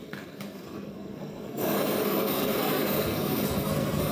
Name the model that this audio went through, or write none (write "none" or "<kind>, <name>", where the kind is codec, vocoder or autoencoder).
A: codec, SNAC